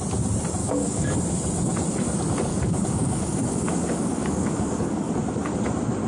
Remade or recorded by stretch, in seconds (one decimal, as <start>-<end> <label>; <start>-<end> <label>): 0.0-0.6 recorded; 0.6-1.2 remade; 1.2-2.5 recorded; 2.5-5.1 remade; 5.1-6.1 recorded